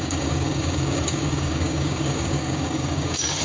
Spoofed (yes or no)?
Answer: yes